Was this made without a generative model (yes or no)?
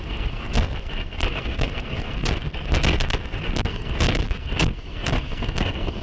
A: no